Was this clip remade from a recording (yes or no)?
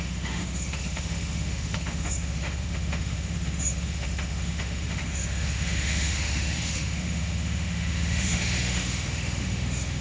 yes